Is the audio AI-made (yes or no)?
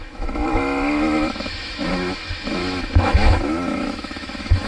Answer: yes